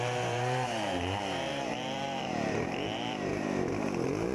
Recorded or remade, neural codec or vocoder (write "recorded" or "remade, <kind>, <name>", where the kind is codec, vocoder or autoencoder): remade, vocoder, BigVGAN v2